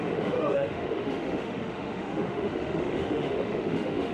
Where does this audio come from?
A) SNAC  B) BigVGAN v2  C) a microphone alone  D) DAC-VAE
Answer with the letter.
D